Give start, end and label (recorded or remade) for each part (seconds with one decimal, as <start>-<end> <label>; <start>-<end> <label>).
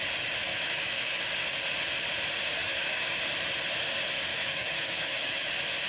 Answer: 0.0-0.5 recorded; 0.5-1.2 remade; 1.2-2.6 recorded; 2.6-3.2 remade; 3.2-4.3 recorded; 4.3-5.5 remade; 5.5-5.9 recorded